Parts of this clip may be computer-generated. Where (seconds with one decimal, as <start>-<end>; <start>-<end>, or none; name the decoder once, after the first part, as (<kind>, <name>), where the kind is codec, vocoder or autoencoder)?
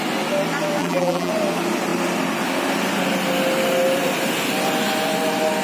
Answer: 0.8-1.3 (vocoder, BigVGAN v2)